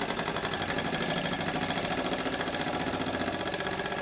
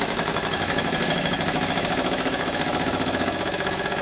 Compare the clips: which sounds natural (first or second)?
first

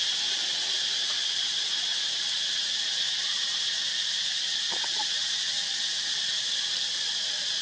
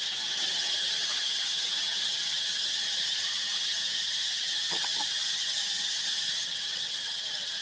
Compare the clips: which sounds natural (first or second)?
first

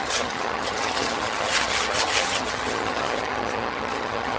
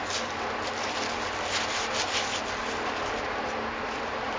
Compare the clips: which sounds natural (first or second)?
second